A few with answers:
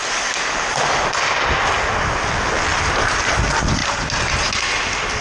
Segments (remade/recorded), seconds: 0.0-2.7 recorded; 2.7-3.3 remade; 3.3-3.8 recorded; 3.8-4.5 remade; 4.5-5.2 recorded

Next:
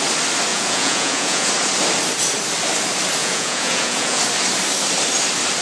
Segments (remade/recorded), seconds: 0.0-0.5 recorded; 0.5-1.5 remade; 1.5-3.2 recorded; 3.2-4.2 remade; 4.2-5.6 recorded

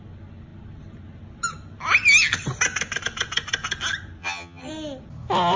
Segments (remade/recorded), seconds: 0.0-4.2 recorded; 4.2-4.7 remade; 4.7-5.6 recorded

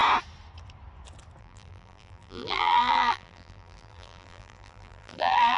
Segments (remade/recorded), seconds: 0.0-1.4 recorded; 1.4-5.6 remade

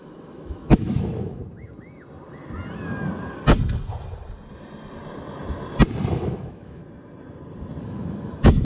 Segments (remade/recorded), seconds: 0.0-1.4 remade; 1.4-6.1 recorded; 6.1-6.8 remade; 6.8-7.8 recorded; 7.8-8.6 remade

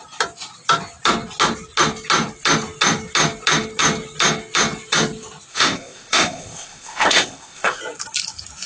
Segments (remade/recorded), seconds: 0.0-5.5 recorded; 5.5-7.8 remade; 7.8-8.7 recorded